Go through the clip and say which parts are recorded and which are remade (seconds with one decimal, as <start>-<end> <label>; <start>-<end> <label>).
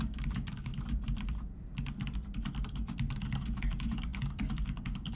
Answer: 0.0-0.7 remade; 0.7-3.2 recorded; 3.2-5.2 remade